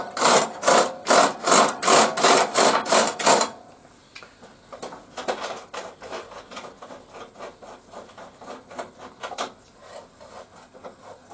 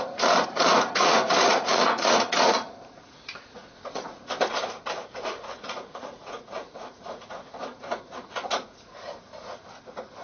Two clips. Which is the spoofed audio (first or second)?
second